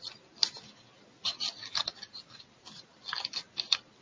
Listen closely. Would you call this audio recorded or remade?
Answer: recorded